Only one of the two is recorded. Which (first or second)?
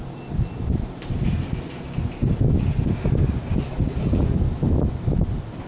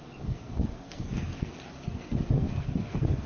first